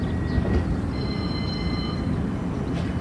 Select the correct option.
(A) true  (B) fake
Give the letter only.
A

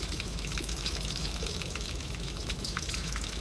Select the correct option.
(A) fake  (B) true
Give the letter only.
A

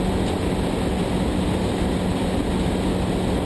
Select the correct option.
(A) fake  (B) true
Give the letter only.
B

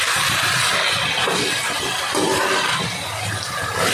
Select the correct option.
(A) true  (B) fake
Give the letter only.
A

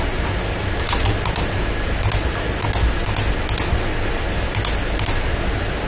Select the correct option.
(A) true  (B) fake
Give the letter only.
A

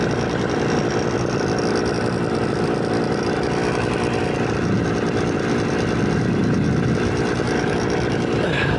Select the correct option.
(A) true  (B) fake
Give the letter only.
A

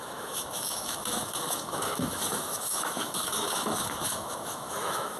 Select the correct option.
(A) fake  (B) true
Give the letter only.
A